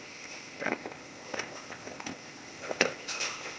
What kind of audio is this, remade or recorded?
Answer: remade